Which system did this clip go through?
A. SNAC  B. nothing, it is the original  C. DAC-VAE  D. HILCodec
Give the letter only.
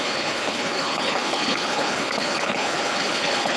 D